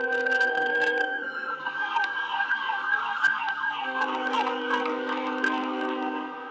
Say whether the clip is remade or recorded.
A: remade